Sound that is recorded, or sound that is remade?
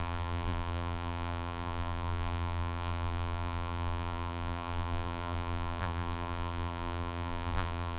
remade